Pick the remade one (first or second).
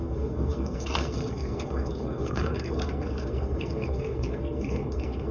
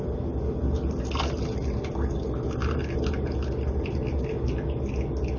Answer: first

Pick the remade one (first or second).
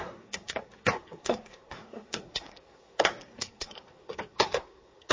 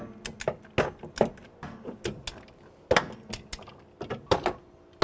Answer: first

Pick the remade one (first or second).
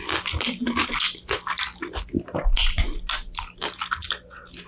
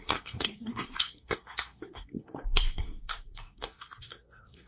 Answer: second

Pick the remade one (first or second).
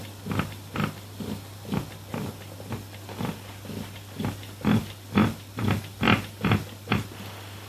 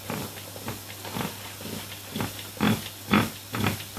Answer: first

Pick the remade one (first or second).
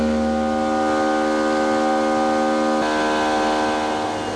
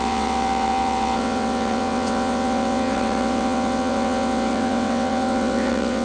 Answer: second